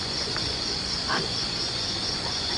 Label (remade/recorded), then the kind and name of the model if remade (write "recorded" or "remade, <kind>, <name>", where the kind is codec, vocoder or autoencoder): remade, vocoder, Vocos